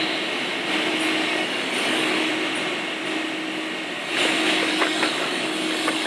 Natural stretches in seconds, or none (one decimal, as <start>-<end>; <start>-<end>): 0.0-1.3; 2.3-4.6